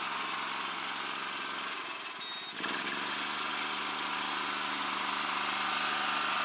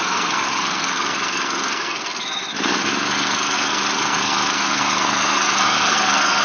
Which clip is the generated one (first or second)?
second